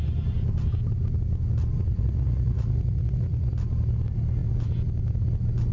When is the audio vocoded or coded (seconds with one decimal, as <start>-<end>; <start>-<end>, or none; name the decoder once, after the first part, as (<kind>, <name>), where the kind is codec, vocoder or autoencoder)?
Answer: 1.9-3.5 (vocoder, Vocos)